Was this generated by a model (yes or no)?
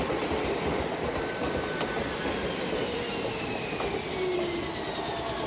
no